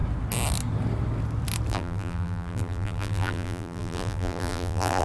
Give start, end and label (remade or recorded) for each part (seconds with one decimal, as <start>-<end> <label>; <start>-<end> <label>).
0.0-1.7 recorded; 1.7-5.0 remade